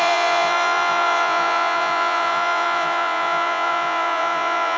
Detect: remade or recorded remade